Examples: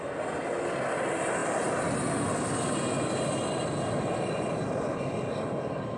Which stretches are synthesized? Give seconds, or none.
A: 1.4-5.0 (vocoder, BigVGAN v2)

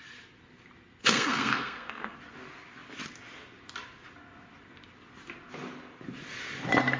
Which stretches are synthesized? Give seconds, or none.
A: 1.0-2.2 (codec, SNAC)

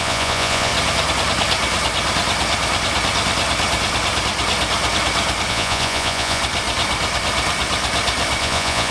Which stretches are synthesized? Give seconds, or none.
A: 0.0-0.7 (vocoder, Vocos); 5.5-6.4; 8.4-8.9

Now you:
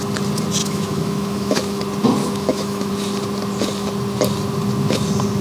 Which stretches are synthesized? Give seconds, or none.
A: 0.6-1.8 (autoencoder, DAC-VAE); 2.2-2.9

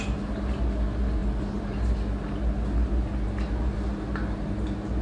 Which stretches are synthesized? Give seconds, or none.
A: none

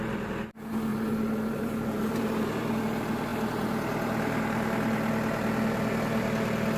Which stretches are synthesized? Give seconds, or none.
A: 0.9-2.6 (vocoder, BigVGAN v2)

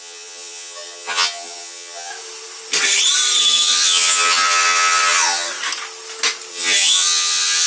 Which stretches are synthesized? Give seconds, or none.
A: 0.0-2.1 (vocoder, HiFi-GAN); 3.4-5.5; 6.5-7.7

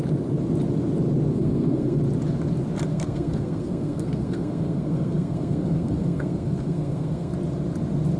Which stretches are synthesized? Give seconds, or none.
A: 1.3-2.0 (codec, SNAC); 2.9-7.3